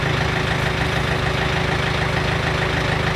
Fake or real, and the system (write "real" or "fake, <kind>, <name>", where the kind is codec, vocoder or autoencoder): real